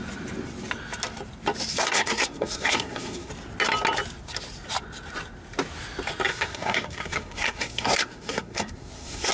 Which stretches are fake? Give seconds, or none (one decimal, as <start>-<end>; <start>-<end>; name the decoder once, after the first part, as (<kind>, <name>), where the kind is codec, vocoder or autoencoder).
1.7-3.3 (codec, SNAC); 6.3-9.3